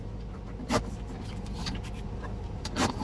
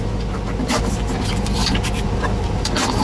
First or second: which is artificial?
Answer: first